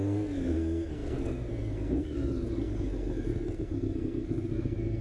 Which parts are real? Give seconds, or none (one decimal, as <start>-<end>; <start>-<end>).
none